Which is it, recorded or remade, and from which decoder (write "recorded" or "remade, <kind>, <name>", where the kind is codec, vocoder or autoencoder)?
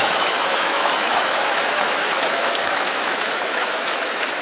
remade, autoencoder, DAC-VAE